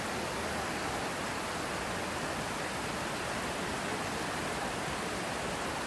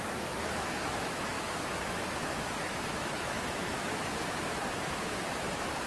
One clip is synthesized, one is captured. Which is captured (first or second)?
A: first